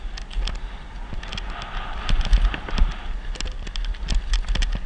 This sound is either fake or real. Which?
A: real